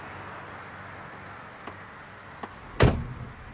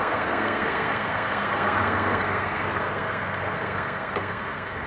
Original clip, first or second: first